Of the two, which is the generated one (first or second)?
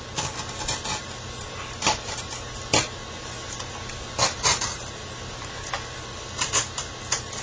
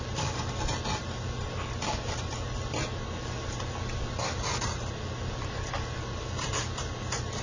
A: second